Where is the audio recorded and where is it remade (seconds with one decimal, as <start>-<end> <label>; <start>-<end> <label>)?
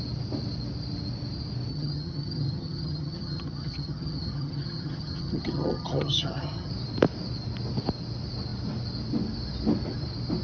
0.0-1.7 recorded; 1.7-6.7 remade; 6.7-10.4 recorded